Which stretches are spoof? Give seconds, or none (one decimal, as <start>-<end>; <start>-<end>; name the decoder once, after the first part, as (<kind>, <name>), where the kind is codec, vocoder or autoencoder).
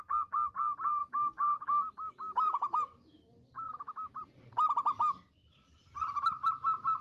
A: 1.0-4.2 (autoencoder, DAC-VAE)